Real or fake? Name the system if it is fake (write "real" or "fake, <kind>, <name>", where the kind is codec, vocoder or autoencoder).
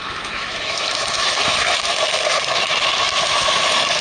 fake, autoencoder, DAC-VAE